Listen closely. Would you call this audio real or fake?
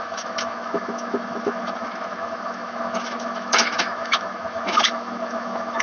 fake